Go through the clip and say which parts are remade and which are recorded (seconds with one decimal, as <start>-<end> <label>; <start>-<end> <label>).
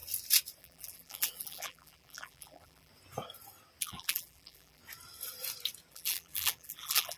0.0-0.6 recorded; 0.6-2.9 remade; 2.9-3.8 recorded; 3.8-4.8 remade; 4.8-5.9 recorded; 5.9-7.2 remade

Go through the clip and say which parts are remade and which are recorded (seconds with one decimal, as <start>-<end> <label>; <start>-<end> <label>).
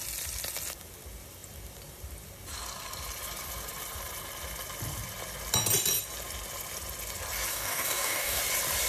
0.0-7.5 recorded; 7.5-8.4 remade; 8.4-8.9 recorded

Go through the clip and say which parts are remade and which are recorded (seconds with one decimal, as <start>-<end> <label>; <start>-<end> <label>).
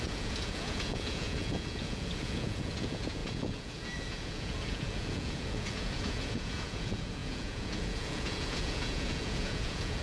0.0-10.0 remade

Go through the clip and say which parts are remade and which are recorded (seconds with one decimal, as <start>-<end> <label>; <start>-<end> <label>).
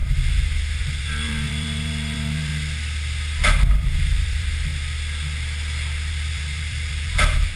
0.0-0.8 recorded; 0.8-2.5 remade; 2.5-3.7 recorded; 3.7-4.7 remade; 4.7-6.1 recorded; 6.1-7.6 remade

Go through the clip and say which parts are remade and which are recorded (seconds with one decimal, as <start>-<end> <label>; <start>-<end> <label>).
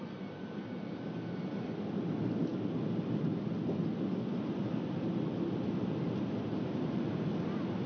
0.0-7.9 recorded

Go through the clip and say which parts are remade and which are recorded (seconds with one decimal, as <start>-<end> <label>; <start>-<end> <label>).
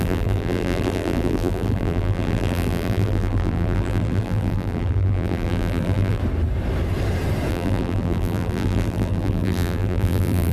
0.0-6.2 remade; 6.2-7.5 recorded; 7.5-10.5 remade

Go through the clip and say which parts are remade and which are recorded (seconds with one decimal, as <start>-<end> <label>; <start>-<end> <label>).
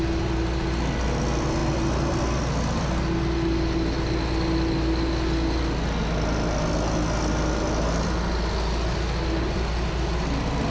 0.0-10.7 recorded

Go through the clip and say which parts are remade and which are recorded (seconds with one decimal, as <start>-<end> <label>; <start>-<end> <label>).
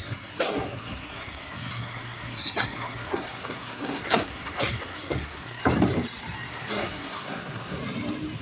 0.0-5.6 remade; 5.6-6.5 recorded; 6.5-7.8 remade; 7.8-8.4 recorded